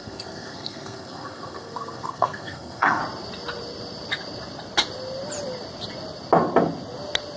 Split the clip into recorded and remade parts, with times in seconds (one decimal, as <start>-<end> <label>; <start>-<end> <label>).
0.0-3.0 remade; 3.0-7.4 recorded